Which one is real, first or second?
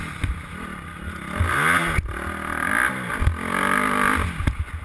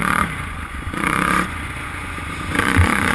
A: first